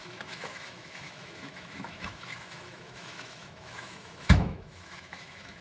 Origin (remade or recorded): remade